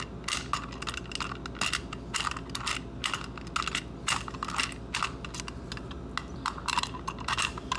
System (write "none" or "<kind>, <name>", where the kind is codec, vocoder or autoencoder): none